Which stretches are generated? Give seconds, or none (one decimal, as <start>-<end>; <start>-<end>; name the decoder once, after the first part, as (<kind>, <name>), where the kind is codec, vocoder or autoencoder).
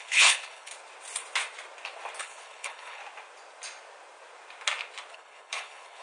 0.0-0.7 (codec, HILCodec); 2.2-3.0; 5.1-6.0